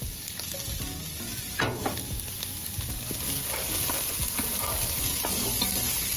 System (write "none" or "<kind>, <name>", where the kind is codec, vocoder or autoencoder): none